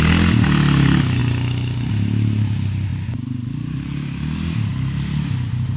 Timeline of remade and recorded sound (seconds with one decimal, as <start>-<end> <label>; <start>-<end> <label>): 0.0-5.8 recorded

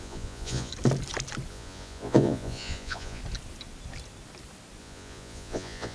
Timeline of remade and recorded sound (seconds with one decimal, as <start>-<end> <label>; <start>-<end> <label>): 0.0-0.7 remade; 0.7-1.5 recorded; 1.5-3.2 remade; 3.2-4.8 recorded; 4.8-5.9 remade

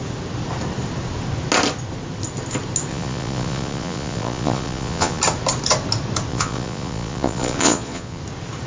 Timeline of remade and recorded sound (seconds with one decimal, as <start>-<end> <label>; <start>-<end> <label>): 0.0-2.9 recorded; 2.9-5.2 remade; 5.2-6.3 recorded; 6.3-8.2 remade; 8.2-8.7 recorded

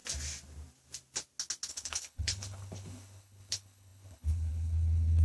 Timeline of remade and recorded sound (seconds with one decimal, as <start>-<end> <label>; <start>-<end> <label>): 0.0-1.7 recorded; 1.7-5.2 remade

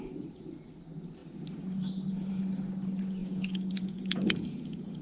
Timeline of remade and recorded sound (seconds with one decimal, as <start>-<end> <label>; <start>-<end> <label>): 0.0-3.2 recorded; 3.2-5.0 remade